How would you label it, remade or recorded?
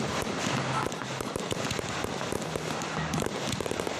recorded